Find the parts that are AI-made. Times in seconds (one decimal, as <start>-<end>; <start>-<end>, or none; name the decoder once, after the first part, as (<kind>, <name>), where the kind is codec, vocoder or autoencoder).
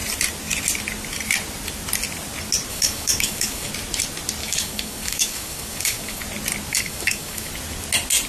2.7-3.7 (codec, DAC); 4.4-6.2; 6.7-7.5